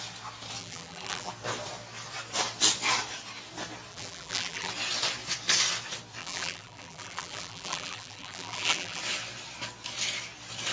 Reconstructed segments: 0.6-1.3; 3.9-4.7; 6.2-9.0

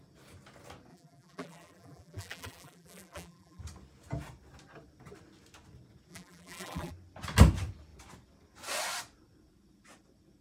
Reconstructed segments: 0.9-3.6; 6.1-6.9

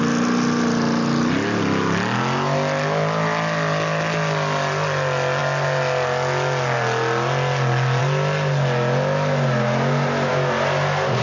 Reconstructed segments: none

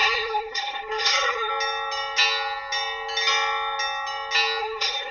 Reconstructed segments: 0.0-1.5; 4.6-5.1